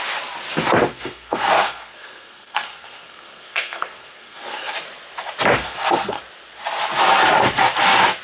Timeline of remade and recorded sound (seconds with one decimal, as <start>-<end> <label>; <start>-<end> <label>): 0.0-0.9 recorded; 0.9-4.7 remade; 4.7-5.6 recorded; 5.6-6.2 remade; 6.2-8.2 recorded